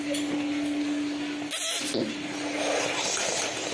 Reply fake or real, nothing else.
real